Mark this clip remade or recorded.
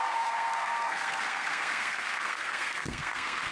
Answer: remade